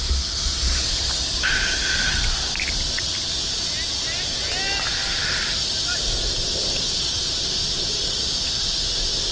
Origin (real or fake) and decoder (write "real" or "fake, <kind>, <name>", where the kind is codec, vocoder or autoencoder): real